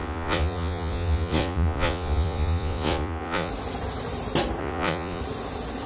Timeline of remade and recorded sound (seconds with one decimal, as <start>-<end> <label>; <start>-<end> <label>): 0.0-3.5 remade; 3.5-4.6 recorded; 4.6-5.2 remade; 5.2-5.9 recorded